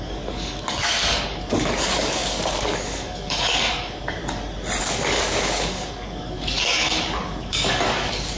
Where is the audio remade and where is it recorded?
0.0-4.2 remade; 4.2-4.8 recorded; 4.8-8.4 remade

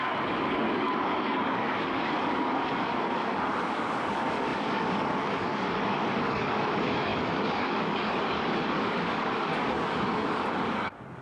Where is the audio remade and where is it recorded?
0.0-11.2 remade

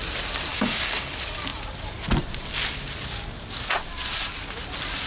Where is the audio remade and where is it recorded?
0.0-0.5 recorded; 0.5-1.1 remade; 1.1-5.1 recorded

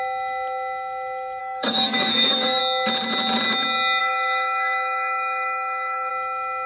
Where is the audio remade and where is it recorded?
0.0-1.4 recorded; 1.4-2.6 remade; 2.6-4.0 recorded; 4.0-6.1 remade; 6.1-6.7 recorded

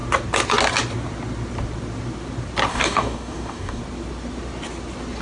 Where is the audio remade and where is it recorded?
0.0-2.7 recorded; 2.7-3.8 remade; 3.8-5.2 recorded

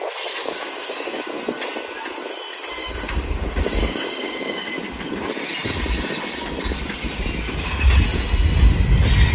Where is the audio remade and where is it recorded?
0.0-0.4 recorded; 0.4-1.6 remade; 1.6-2.8 recorded; 2.8-4.7 remade; 4.7-9.3 recorded

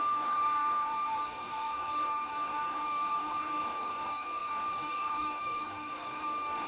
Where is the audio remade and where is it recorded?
0.0-6.7 remade